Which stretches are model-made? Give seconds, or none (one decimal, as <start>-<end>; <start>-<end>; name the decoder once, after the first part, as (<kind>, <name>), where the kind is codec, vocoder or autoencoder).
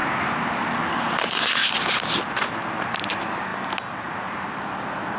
none